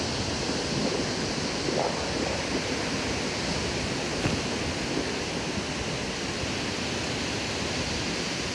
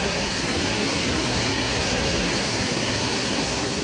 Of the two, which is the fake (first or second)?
second